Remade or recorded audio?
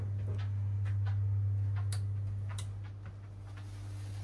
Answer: recorded